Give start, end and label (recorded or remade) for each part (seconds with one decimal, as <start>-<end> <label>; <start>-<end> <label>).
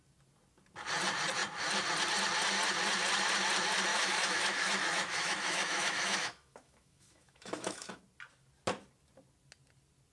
0.0-3.9 recorded; 3.9-8.0 remade; 8.0-10.1 recorded